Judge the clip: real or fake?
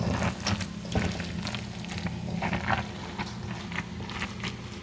real